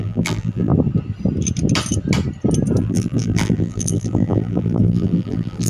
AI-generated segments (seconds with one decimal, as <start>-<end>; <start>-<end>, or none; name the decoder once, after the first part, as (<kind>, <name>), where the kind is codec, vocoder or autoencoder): 0.0-0.7 (vocoder, BigVGAN v2); 2.8-5.7